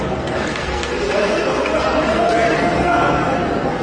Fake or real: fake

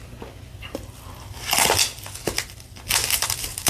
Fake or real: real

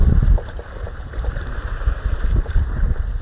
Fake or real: real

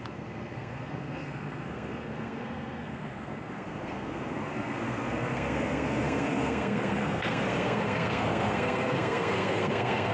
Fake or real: fake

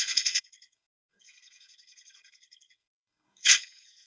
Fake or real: fake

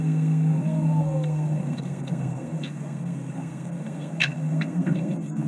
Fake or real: fake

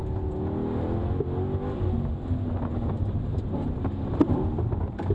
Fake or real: real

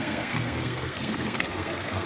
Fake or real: fake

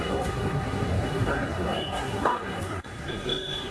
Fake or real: fake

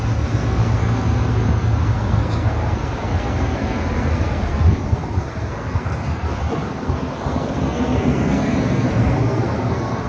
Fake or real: fake